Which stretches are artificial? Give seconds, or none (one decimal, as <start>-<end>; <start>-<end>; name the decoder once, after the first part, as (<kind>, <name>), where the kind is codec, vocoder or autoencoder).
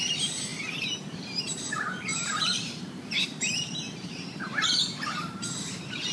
0.0-6.1 (vocoder, BigVGAN v2)